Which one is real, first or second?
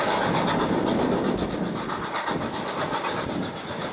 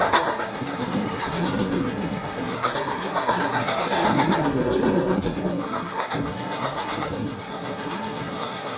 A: first